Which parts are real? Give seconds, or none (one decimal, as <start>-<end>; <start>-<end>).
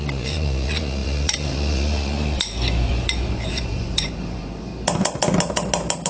4.7-6.1